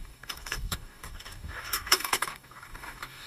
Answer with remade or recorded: remade